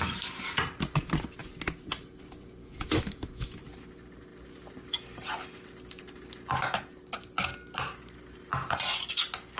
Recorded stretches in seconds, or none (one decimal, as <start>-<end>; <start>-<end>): 0.0-2.6; 3.6-9.6